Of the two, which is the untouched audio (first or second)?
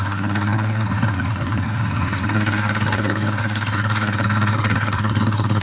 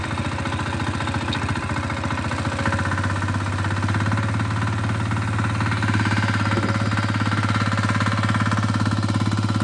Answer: second